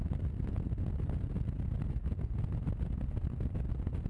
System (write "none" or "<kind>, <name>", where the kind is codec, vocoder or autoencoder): none